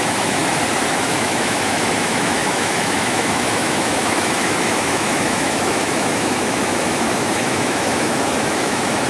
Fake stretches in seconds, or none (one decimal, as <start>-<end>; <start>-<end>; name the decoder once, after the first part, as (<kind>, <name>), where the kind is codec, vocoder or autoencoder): 0.0-0.4 (autoencoder, DAC-VAE); 0.9-9.1